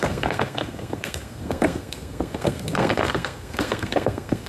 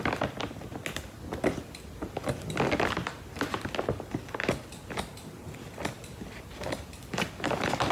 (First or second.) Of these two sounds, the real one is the second